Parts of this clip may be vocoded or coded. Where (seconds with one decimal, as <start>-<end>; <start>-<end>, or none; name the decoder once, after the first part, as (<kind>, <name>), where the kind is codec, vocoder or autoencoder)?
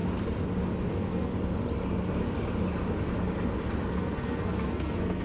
0.9-1.3 (codec, SNAC); 3.9-5.2